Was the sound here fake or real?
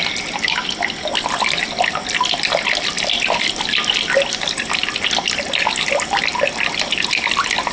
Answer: real